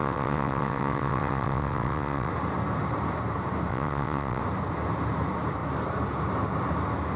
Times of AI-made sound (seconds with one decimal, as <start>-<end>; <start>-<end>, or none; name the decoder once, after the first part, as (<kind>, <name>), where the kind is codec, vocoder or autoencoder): 0.0-2.3 (vocoder, WaveNeXt); 3.7-4.4